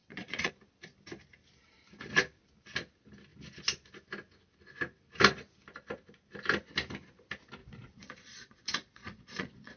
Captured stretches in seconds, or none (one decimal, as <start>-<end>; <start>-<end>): 0.5-7.6